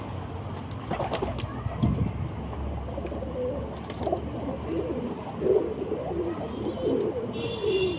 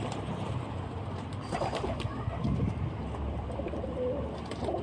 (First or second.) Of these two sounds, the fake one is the second